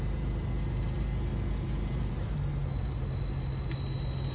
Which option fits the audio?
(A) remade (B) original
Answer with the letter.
B